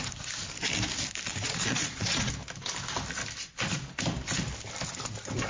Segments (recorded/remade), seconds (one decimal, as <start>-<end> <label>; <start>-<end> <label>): 0.0-1.3 recorded; 1.3-2.3 remade; 2.3-5.5 recorded